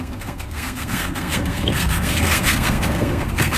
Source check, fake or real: fake